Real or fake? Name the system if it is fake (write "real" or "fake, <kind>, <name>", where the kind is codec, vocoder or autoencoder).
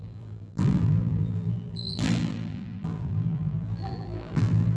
fake, vocoder, BigVGAN v2